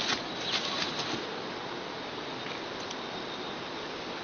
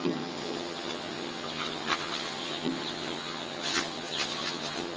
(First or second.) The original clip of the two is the first